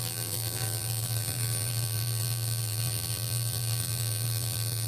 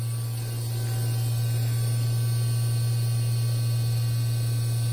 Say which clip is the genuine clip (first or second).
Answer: second